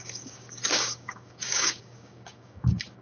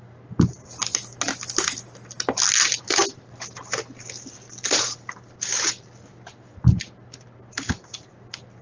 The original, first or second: second